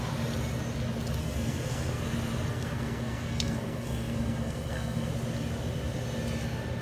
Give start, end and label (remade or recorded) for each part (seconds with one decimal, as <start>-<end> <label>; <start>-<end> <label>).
0.0-1.2 recorded; 1.2-2.0 remade; 2.0-2.5 recorded; 2.5-5.1 remade; 5.1-6.8 recorded